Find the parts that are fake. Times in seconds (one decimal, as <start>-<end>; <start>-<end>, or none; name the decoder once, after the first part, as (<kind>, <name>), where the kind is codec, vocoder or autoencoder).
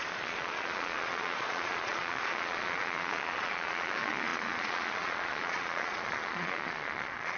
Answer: 0.0-7.4 (vocoder, Vocos)